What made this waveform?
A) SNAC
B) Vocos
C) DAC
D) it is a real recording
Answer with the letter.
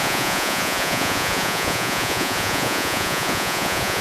B